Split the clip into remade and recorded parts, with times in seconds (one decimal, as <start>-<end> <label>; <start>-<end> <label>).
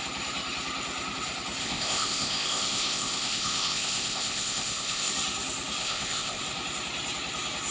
0.0-1.6 recorded; 1.6-5.1 remade; 5.1-5.8 recorded; 5.8-6.4 remade; 6.4-7.7 recorded